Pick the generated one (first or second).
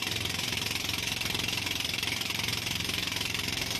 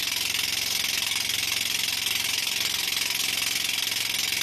first